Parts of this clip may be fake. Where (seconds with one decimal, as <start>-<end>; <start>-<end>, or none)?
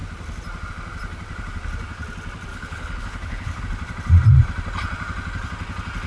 2.5-3.6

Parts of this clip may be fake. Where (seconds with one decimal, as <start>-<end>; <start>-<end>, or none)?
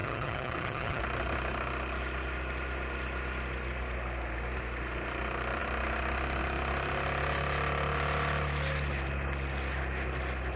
0.0-1.0